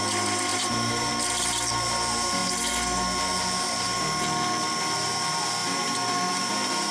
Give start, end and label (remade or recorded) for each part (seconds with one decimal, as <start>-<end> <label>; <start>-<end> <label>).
0.0-0.5 recorded; 0.5-1.1 remade; 1.1-5.6 recorded; 5.6-6.9 remade